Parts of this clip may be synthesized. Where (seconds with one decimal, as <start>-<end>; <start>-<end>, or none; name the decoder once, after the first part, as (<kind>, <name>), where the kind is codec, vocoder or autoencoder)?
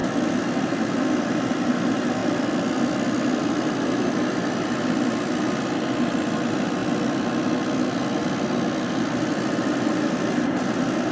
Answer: 2.2-3.4 (vocoder, BigVGAN v2)